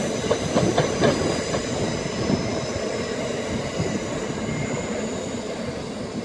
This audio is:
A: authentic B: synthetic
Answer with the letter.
A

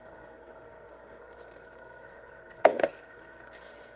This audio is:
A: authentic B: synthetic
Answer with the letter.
B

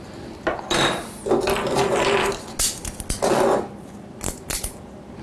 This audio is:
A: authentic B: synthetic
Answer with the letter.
A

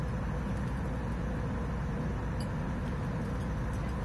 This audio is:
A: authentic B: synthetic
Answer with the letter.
A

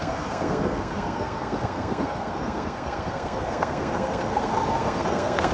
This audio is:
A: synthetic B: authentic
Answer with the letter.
A